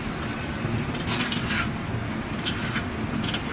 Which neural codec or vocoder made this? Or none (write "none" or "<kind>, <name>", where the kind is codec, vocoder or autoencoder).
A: none